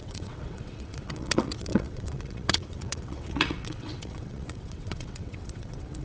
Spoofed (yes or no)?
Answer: yes